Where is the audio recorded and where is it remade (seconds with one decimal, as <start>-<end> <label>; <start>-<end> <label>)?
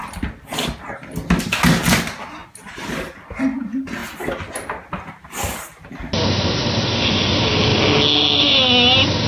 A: 0.0-9.3 recorded